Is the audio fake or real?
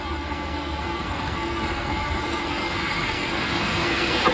fake